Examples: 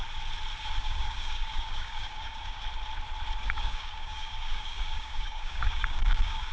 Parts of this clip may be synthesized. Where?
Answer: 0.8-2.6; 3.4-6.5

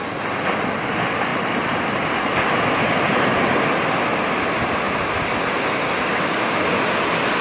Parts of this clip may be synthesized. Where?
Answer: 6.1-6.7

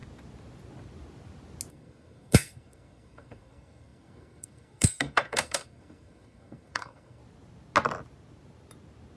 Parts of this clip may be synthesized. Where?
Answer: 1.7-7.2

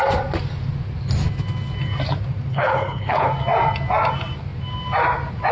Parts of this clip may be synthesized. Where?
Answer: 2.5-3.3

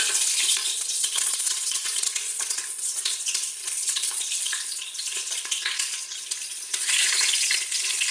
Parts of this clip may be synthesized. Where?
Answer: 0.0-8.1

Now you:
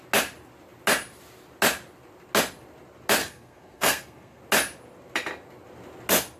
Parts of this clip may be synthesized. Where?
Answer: 3.2-4.4